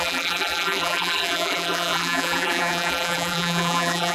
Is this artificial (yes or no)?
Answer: yes